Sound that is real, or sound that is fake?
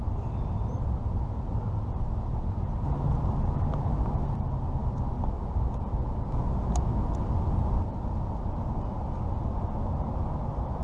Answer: real